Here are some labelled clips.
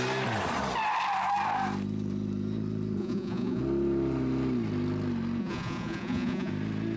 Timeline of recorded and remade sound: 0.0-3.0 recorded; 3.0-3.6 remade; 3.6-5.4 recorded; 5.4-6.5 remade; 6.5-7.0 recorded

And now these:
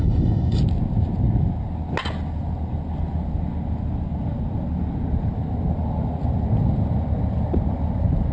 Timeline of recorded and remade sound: 0.0-0.6 remade; 0.6-8.3 recorded

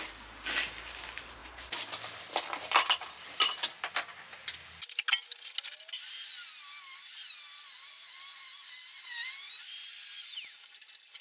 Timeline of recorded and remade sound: 0.0-11.2 recorded

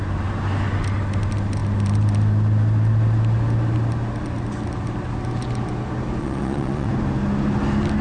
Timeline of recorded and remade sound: 0.0-6.2 recorded; 6.2-6.9 remade; 6.9-8.0 recorded

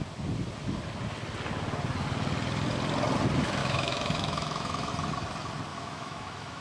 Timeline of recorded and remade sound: 0.0-3.6 recorded; 3.6-4.9 remade; 4.9-5.7 recorded; 5.7-6.6 remade

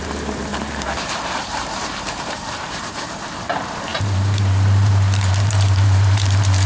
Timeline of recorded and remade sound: 0.0-6.7 remade

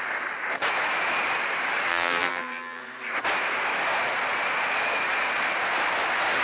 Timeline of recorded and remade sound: 0.0-1.9 recorded; 1.9-2.8 remade; 2.8-6.4 recorded

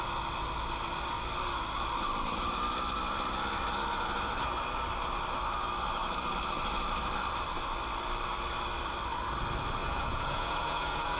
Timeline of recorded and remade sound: 0.0-9.8 recorded; 9.8-11.2 remade